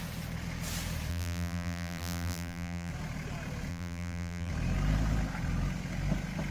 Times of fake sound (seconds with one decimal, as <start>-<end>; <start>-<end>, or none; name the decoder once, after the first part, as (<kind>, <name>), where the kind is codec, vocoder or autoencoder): 1.1-2.9 (vocoder, BigVGAN v2); 3.7-4.5